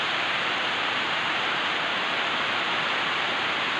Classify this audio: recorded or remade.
remade